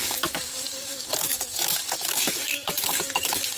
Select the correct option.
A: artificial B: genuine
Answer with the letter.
A